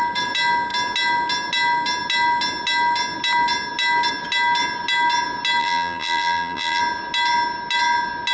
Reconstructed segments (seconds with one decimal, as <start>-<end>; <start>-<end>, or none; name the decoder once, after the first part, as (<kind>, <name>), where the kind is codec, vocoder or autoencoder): 5.6-6.8 (vocoder, BigVGAN v2)